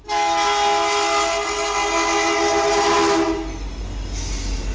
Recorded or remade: recorded